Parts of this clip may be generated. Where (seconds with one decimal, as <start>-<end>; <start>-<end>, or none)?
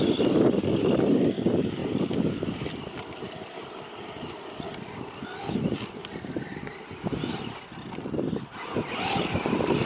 1.8-4.3